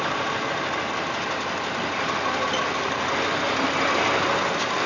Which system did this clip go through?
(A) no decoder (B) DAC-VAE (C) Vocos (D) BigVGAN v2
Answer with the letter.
A